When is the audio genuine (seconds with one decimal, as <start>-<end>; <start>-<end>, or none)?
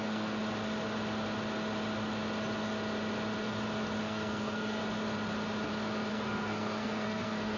0.4-4.0; 4.8-6.1